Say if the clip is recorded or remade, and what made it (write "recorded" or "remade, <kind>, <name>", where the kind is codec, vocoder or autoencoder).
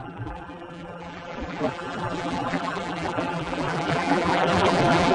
remade, vocoder, BigVGAN v2